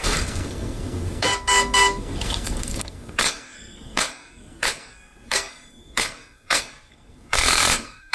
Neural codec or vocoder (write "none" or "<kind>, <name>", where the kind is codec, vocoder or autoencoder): codec, SNAC